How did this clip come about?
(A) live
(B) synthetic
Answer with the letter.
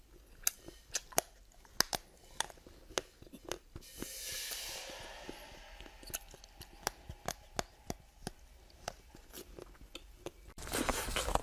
A